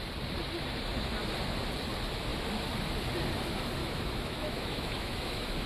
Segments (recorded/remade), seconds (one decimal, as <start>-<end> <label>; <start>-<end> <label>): 0.0-3.8 recorded; 3.8-5.7 remade